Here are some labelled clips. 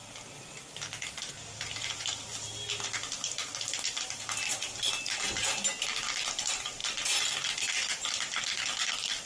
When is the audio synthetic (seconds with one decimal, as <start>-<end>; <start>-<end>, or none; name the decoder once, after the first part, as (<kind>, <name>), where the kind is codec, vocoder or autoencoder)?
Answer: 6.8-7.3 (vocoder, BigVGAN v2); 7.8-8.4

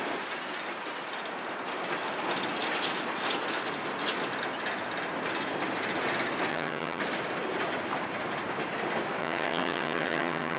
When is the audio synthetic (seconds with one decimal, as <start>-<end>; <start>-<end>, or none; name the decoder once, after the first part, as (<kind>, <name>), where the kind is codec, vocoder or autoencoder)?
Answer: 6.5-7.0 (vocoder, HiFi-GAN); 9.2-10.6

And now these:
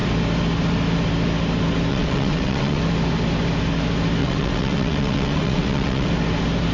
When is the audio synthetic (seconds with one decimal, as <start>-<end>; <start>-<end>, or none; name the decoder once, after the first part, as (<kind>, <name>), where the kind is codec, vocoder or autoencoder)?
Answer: 1.9-2.8 (vocoder, WaveNeXt); 4.2-6.1